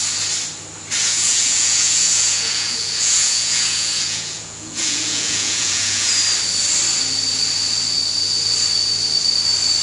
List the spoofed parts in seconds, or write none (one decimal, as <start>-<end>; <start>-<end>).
1.0-6.1